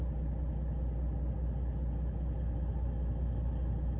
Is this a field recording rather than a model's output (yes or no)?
yes